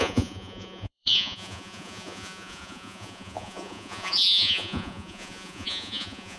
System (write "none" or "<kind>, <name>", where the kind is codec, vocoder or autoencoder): vocoder, Vocos